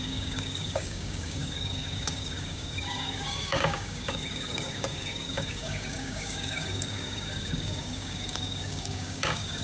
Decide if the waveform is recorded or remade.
remade